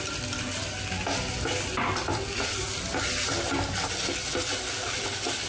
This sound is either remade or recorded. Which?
recorded